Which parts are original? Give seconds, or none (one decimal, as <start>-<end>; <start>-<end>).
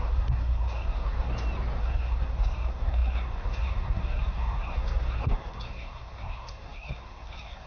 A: 1.3-1.8